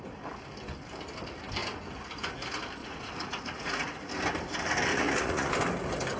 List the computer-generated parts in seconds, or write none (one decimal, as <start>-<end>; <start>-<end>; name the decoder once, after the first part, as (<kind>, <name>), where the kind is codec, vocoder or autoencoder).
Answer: 2.8-4.1 (vocoder, Vocos); 4.9-5.5